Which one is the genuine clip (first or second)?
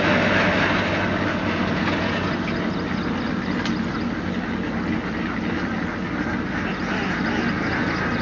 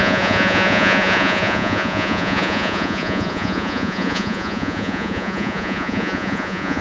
first